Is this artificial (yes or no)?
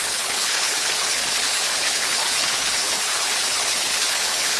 yes